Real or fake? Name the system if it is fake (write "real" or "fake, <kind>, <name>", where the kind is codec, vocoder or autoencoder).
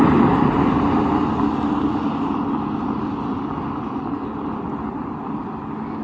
real